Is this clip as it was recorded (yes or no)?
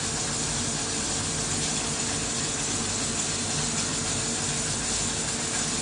yes